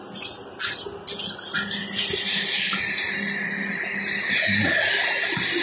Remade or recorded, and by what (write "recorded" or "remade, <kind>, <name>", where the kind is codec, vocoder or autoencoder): recorded